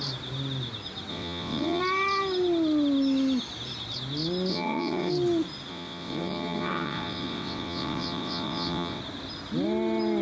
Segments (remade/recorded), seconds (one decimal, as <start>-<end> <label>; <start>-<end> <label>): 0.0-1.1 recorded; 1.1-1.8 remade; 1.8-4.5 recorded; 4.5-5.1 remade; 5.1-5.7 recorded; 5.7-9.0 remade; 9.0-10.2 recorded